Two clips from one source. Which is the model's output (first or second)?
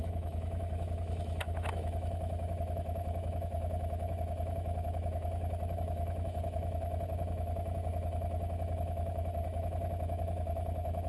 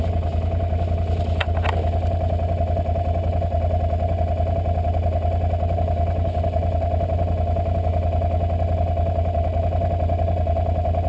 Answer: first